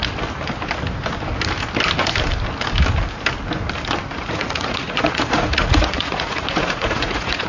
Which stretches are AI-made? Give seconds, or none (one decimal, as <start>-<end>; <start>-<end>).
4.2-7.5